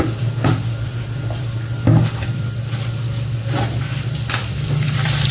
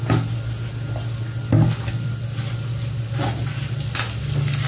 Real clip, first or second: second